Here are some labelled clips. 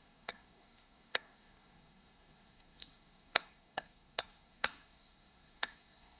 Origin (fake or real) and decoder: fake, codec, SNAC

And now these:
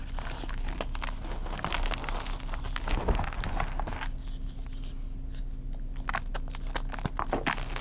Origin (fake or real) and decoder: real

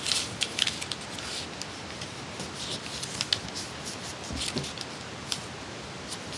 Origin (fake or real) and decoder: real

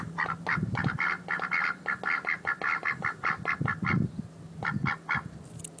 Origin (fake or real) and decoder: real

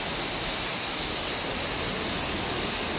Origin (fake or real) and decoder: real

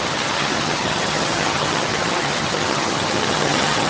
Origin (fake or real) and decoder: fake, vocoder, HiFi-GAN